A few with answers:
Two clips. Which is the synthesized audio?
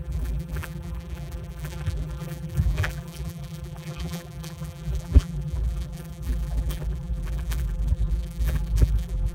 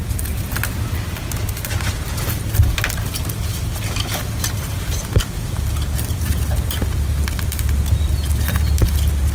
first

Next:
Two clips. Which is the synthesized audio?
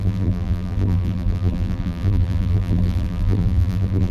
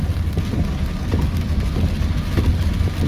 first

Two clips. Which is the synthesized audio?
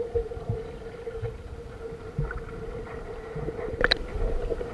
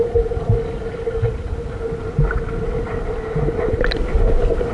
first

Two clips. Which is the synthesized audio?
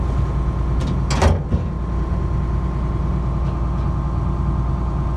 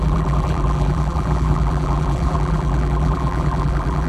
second